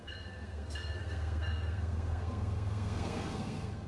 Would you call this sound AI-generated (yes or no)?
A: yes